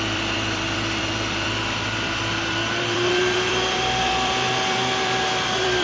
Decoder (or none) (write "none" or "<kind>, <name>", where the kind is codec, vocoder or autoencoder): vocoder, BigVGAN v2